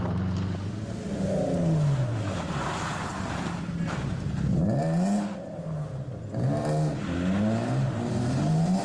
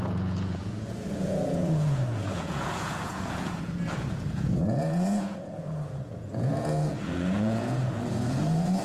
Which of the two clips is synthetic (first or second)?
second